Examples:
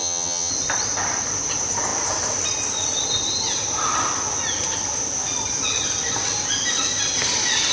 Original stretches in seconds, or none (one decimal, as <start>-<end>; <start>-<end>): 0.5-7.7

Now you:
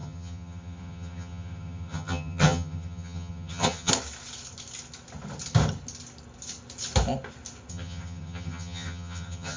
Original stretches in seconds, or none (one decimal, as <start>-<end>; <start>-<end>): 3.9-7.7

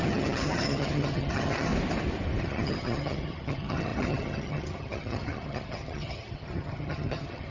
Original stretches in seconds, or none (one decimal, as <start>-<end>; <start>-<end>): 1.7-2.4